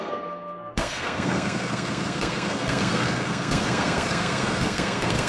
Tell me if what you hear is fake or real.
fake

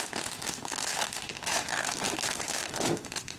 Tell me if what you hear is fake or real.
fake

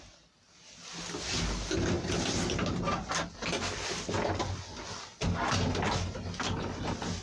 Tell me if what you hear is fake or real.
real